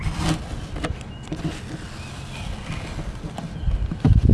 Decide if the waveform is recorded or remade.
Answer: recorded